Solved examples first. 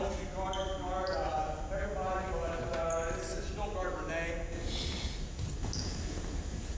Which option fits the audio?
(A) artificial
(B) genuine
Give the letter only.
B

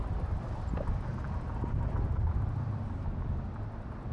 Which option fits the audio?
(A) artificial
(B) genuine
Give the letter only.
A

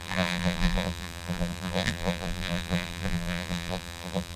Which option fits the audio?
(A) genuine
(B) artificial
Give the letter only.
B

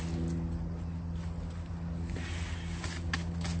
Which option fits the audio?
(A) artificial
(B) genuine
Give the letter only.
B